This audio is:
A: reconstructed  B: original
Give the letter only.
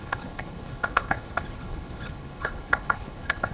A